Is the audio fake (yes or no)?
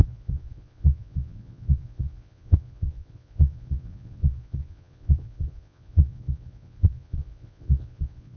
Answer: yes